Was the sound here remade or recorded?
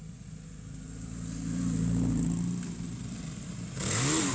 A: recorded